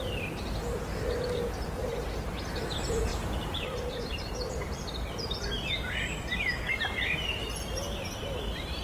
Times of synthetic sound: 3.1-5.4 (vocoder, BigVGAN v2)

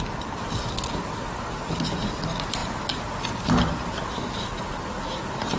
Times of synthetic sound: none